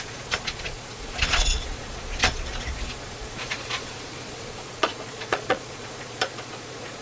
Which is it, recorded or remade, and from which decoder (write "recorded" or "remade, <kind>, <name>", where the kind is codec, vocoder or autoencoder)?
remade, vocoder, Vocos